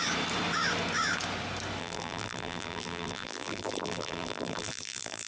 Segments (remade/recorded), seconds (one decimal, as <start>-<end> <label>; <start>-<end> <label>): 0.0-1.8 recorded; 1.8-5.3 remade